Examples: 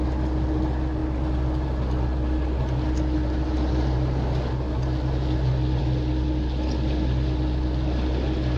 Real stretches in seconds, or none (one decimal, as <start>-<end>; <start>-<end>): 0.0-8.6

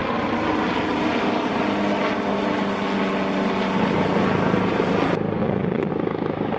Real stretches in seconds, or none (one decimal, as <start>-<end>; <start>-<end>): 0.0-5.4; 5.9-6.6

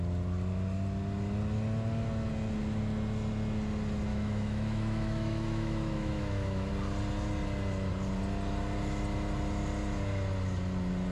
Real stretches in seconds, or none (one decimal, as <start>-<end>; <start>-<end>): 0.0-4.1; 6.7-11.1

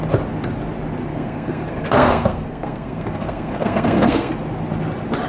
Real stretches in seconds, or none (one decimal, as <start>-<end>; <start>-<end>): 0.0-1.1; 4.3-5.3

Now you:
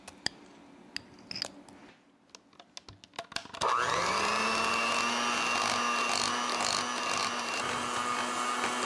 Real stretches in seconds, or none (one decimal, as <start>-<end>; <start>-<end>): 0.0-7.2; 7.8-8.9

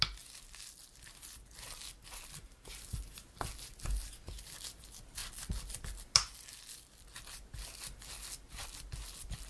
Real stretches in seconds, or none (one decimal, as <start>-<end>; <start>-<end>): 0.0-9.5

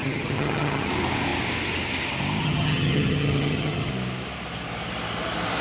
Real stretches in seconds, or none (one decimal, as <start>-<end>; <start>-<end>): 0.9-2.4; 3.9-5.6